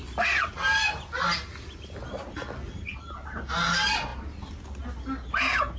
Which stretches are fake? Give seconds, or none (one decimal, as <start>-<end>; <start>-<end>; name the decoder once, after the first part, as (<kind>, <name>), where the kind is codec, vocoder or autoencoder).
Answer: none

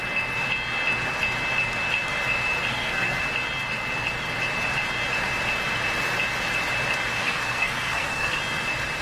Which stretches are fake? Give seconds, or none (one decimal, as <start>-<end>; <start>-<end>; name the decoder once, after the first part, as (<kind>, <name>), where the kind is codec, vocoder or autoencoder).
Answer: 2.7-3.2 (codec, SNAC); 7.2-8.4

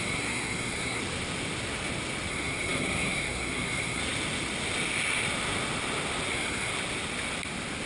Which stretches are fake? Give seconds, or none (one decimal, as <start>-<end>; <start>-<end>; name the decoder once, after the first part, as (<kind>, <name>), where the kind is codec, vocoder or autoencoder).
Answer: 0.0-1.0 (codec, SNAC); 2.3-4.0; 6.3-6.7

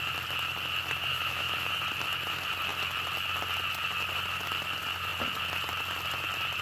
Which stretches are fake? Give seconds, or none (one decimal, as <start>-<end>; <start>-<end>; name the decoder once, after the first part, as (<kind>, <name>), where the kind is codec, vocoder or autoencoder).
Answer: 1.1-1.7 (autoencoder, DAC-VAE)

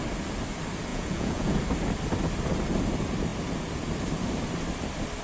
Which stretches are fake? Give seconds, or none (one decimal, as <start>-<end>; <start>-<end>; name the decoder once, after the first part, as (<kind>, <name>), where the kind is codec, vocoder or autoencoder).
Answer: 0.9-1.6 (vocoder, Vocos)

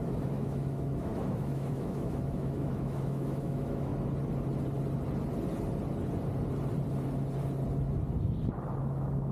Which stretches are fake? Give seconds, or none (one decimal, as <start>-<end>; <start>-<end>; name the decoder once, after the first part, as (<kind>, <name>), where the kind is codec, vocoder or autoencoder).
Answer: 0.0-3.9 (autoencoder, DAC-VAE); 8.8-9.3